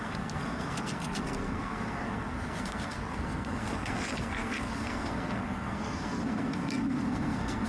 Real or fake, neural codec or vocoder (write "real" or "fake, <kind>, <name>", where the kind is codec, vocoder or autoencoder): fake, codec, SNAC